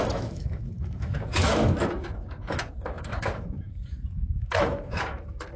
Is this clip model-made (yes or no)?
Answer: yes